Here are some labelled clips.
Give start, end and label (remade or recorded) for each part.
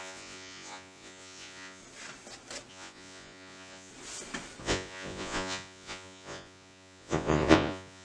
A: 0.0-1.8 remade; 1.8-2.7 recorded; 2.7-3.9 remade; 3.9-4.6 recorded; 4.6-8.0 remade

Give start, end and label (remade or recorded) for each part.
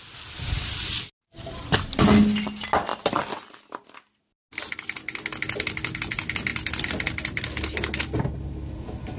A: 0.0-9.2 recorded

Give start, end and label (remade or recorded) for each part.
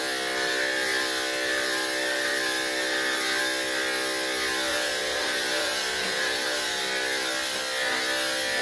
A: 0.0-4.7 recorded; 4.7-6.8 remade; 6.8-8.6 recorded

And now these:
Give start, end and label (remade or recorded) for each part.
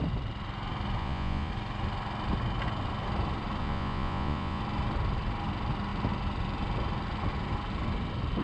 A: 0.0-1.0 recorded; 1.0-1.5 remade; 1.5-3.6 recorded; 3.6-4.6 remade; 4.6-8.4 recorded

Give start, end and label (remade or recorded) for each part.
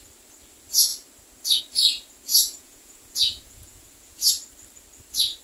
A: 0.0-2.3 recorded; 2.3-4.3 remade; 4.3-5.4 recorded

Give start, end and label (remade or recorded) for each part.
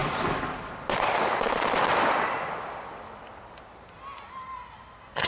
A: 0.0-5.3 recorded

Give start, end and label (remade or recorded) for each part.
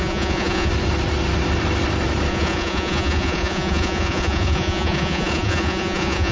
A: 0.0-0.7 remade; 0.7-2.3 recorded; 2.3-6.3 remade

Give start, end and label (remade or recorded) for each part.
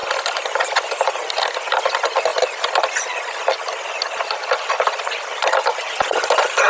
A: 0.0-6.7 recorded